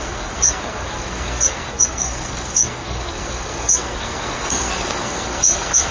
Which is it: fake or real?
fake